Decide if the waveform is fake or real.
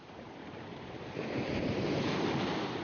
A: fake